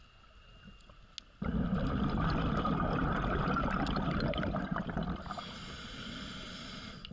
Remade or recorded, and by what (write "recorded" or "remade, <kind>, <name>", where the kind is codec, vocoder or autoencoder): recorded